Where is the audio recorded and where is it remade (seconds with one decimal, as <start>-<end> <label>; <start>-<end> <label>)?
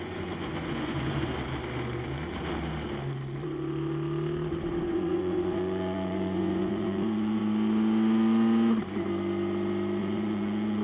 0.0-1.3 remade; 1.3-4.8 recorded; 4.8-7.4 remade; 7.4-10.0 recorded; 10.0-10.8 remade